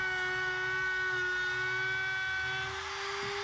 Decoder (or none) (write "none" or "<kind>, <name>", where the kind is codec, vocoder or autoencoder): none